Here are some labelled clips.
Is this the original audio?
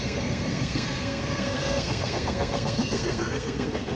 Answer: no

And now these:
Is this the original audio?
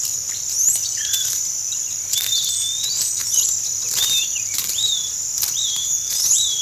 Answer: no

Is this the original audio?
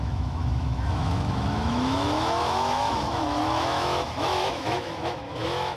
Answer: no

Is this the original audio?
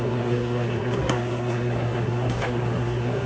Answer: no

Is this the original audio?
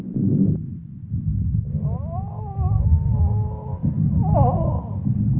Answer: yes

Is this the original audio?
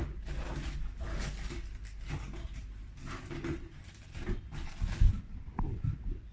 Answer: yes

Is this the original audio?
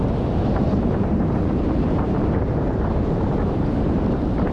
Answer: no